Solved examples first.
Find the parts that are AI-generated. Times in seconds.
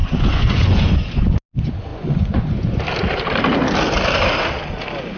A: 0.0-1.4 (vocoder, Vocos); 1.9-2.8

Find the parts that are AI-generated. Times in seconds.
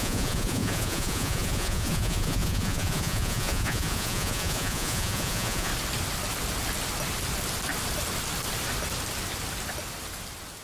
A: 0.0-5.7 (vocoder, Vocos)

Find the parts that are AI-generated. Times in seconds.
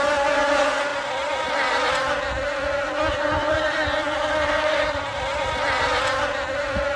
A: 3.4-5.2 (vocoder, BigVGAN v2)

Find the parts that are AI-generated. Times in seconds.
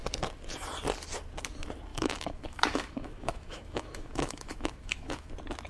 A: 1.9-5.3 (autoencoder, DAC-VAE)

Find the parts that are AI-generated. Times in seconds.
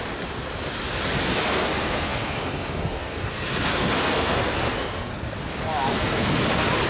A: 1.2-5.3 (codec, SNAC); 5.9-6.4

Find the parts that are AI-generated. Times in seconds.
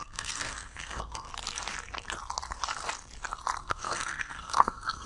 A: 0.0-1.3 (codec, SNAC); 3.6-5.1